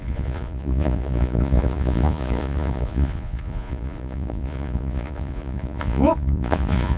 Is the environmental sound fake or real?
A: fake